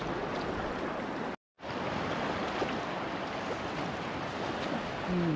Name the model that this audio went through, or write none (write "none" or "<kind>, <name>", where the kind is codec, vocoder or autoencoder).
none